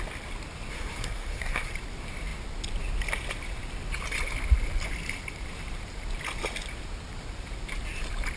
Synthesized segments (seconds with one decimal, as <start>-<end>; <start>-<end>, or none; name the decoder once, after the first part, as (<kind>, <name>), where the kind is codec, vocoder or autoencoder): 0.7-1.7 (codec, SNAC)